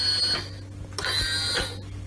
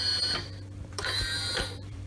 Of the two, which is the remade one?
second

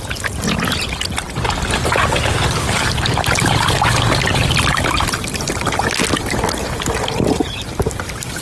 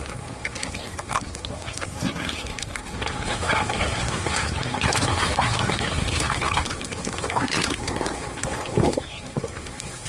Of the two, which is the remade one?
second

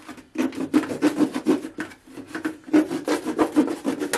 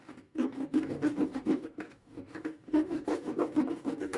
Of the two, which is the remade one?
second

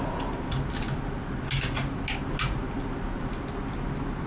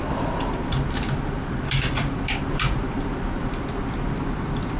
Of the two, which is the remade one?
second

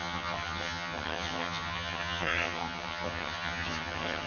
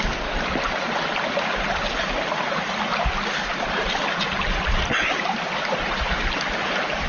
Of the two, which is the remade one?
first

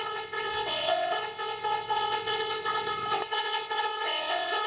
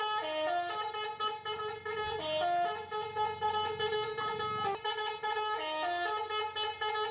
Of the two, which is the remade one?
first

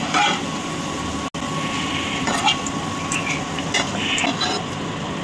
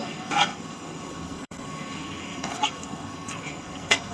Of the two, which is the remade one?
second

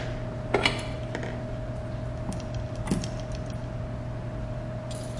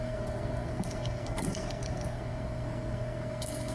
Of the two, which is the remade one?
second